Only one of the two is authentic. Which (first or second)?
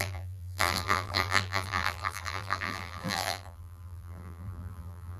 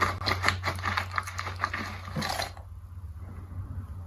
second